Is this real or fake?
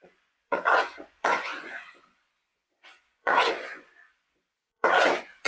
fake